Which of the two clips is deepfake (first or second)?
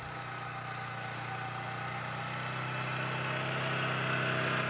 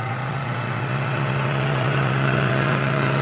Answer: second